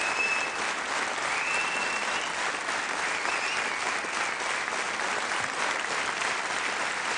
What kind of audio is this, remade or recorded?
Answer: recorded